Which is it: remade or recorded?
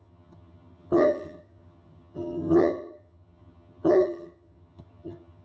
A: remade